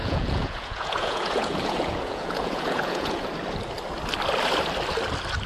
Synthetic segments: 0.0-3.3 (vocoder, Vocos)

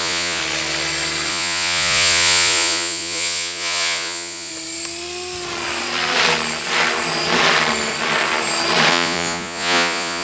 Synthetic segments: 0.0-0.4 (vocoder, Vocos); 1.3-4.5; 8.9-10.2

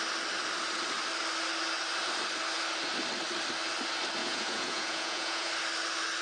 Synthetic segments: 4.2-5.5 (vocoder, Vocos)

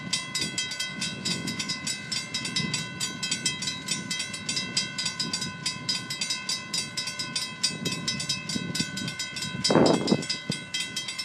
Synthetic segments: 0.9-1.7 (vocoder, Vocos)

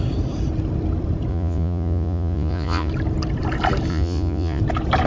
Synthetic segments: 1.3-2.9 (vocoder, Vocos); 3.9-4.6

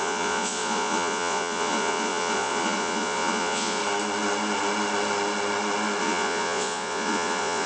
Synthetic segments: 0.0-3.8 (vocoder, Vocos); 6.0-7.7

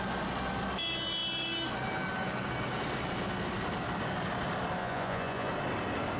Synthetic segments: 4.8-5.5 (vocoder, Vocos)